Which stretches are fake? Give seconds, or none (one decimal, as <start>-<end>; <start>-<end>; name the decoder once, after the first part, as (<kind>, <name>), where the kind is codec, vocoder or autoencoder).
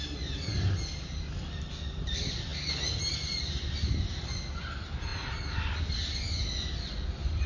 none